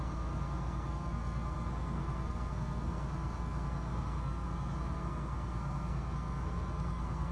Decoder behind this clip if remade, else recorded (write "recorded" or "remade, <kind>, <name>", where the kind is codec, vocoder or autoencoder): remade, codec, SNAC